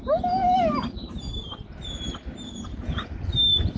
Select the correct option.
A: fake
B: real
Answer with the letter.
B